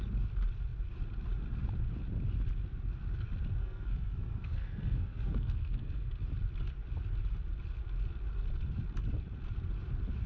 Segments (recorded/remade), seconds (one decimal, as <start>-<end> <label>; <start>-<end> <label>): 0.0-3.6 recorded; 3.6-6.1 remade; 6.1-10.3 recorded